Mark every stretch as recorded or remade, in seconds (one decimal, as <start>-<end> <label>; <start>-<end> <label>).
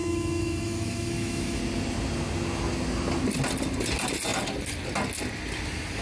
0.0-1.6 remade; 1.6-6.0 recorded